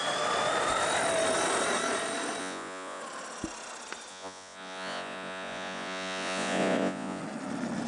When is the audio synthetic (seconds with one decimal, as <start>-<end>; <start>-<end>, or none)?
2.4-3.0; 4.1-7.2